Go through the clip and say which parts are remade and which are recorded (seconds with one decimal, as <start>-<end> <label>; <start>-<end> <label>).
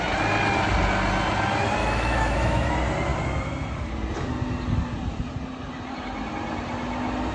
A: 0.0-1.8 recorded; 1.8-2.7 remade; 2.7-7.3 recorded